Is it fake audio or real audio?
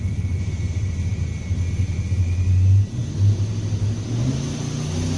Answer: real